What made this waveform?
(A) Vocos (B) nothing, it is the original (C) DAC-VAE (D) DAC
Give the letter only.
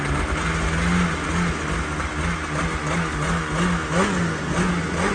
B